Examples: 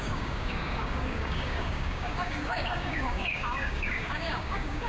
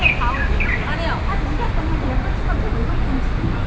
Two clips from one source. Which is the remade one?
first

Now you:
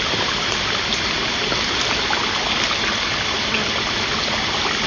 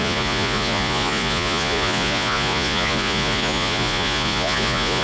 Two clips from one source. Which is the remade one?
second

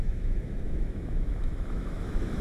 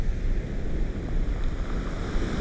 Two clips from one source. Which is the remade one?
first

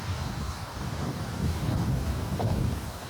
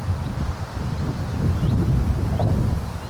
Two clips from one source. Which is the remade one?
first